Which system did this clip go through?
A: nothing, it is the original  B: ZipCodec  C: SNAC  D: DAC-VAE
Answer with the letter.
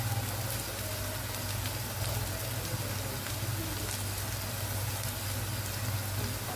A